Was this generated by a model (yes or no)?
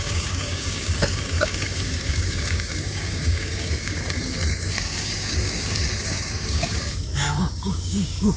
yes